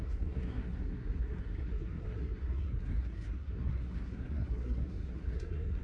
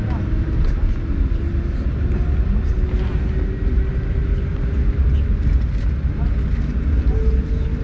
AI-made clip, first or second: first